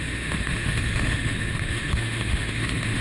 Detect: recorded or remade remade